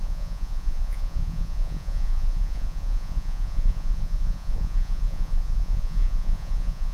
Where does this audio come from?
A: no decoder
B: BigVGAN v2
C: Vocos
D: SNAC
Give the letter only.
C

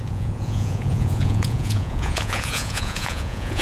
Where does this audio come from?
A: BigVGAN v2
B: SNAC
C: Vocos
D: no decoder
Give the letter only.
C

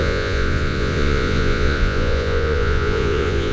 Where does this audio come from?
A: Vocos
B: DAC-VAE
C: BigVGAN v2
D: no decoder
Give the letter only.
A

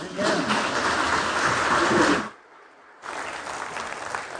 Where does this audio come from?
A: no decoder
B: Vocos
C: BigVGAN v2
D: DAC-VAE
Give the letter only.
A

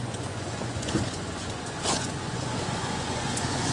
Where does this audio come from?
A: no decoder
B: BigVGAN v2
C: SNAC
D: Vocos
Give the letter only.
D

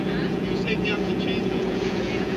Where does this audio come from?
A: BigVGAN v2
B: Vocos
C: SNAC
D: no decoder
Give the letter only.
B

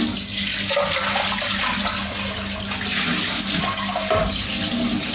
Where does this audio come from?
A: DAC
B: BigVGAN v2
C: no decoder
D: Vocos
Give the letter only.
C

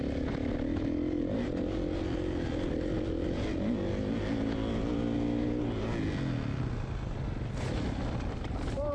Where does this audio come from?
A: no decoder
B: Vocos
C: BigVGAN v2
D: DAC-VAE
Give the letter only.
A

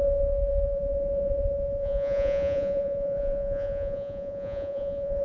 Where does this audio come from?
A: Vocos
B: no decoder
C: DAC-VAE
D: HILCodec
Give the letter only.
A